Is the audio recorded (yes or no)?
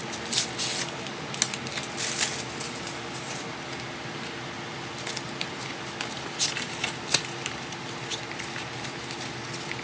yes